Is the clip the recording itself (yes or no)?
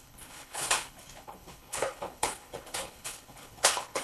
no